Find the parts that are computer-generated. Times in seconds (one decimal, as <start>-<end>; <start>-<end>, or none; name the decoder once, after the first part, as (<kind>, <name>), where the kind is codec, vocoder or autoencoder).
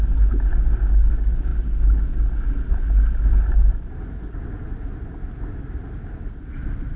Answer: none